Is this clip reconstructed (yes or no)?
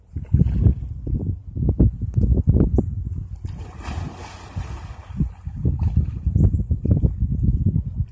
no